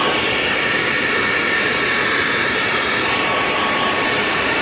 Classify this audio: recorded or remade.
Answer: remade